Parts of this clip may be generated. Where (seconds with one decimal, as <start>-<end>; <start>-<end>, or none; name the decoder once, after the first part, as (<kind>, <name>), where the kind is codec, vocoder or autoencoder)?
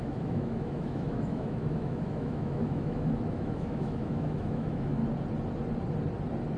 0.0-5.0 (autoencoder, DAC-VAE)